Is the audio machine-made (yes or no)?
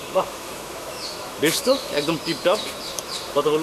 yes